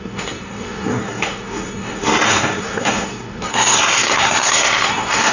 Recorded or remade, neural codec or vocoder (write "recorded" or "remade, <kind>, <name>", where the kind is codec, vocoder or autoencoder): remade, codec, SNAC